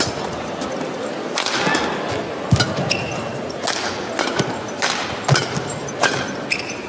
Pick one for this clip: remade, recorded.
recorded